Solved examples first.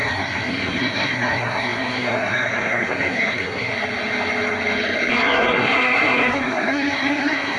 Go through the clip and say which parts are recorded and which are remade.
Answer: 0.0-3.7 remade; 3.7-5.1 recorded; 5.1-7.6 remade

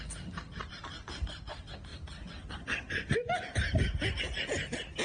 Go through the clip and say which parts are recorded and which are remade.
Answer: 0.0-5.0 recorded

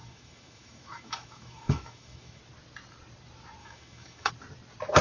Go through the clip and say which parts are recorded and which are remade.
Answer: 0.0-2.4 remade; 2.4-3.6 recorded; 3.6-4.3 remade; 4.3-5.0 recorded

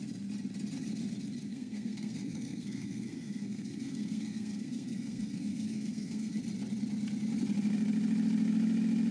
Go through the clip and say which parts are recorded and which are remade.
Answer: 0.0-1.5 recorded; 1.5-6.4 remade; 6.4-9.1 recorded

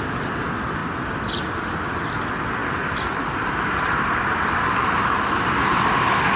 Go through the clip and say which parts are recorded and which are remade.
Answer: 0.0-0.8 recorded; 0.8-1.7 remade; 1.7-2.6 recorded; 2.6-5.8 remade; 5.8-6.4 recorded

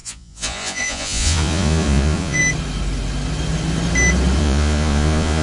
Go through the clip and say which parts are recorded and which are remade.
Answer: 0.0-2.4 remade; 2.4-4.4 recorded; 4.4-5.4 remade